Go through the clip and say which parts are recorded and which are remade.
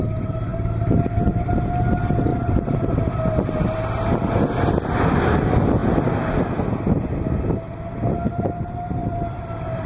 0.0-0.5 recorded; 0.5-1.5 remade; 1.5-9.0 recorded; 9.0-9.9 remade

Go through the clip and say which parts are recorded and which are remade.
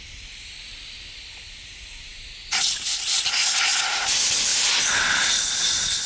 0.0-6.1 recorded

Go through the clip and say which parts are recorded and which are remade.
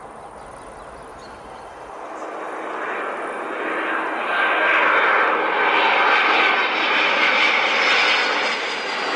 0.0-1.1 recorded; 1.1-2.4 remade; 2.4-9.2 recorded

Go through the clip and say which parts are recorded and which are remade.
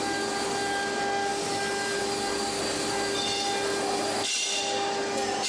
0.0-5.5 recorded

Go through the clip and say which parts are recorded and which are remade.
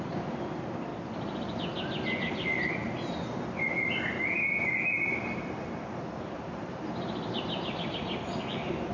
0.0-0.9 remade; 0.9-5.9 recorded; 5.9-8.9 remade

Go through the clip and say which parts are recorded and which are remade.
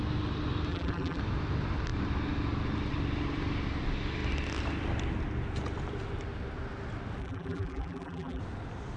0.0-0.7 recorded; 0.7-1.2 remade; 1.2-7.2 recorded; 7.2-8.4 remade; 8.4-9.0 recorded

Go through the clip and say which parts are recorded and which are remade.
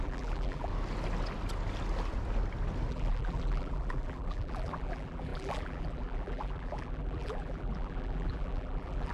0.0-0.7 remade; 0.7-2.9 recorded; 2.9-9.1 remade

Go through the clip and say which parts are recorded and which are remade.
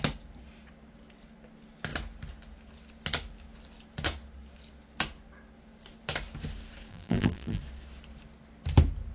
0.0-6.9 recorded; 6.9-7.6 remade; 7.6-9.1 recorded